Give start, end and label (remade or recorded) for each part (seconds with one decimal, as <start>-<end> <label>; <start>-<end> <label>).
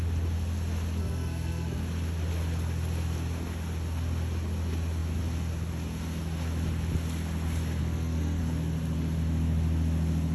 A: 0.0-1.0 recorded; 1.0-1.8 remade; 1.8-7.8 recorded; 7.8-8.4 remade; 8.4-10.3 recorded